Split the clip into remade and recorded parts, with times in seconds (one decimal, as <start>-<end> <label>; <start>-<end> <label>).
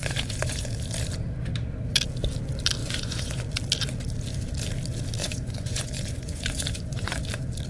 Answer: 0.0-0.7 remade; 0.7-2.8 recorded; 2.8-3.4 remade; 3.4-5.2 recorded; 5.2-7.2 remade; 7.2-7.7 recorded